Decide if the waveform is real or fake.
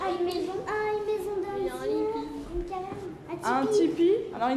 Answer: real